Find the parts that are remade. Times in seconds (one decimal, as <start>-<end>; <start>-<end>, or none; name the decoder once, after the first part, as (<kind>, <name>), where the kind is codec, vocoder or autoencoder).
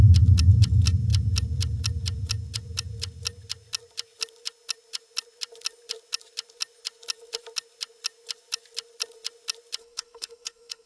9.8-10.9 (codec, SNAC)